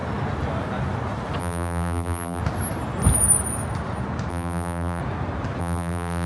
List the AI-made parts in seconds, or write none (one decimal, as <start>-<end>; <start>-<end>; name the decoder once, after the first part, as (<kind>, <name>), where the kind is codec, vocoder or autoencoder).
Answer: 1.4-2.4 (vocoder, BigVGAN v2); 4.3-5.0; 5.6-6.3